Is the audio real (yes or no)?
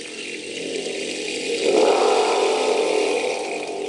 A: yes